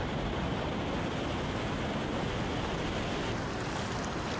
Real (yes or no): yes